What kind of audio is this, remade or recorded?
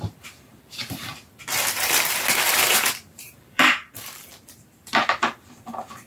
remade